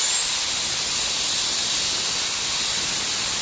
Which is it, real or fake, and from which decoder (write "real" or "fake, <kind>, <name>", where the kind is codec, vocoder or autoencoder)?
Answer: real